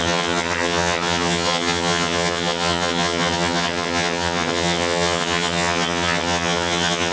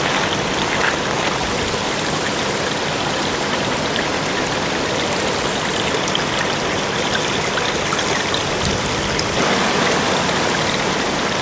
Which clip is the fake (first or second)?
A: first